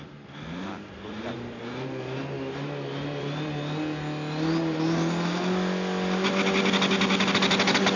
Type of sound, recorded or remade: recorded